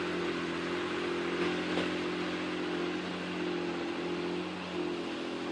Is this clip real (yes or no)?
yes